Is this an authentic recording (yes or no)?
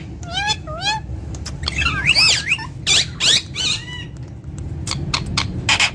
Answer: yes